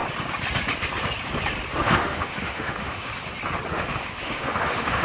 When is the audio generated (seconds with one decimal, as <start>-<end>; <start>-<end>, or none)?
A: 1.8-3.1; 3.7-5.0